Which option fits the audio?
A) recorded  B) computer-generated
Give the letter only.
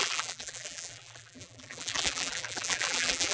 B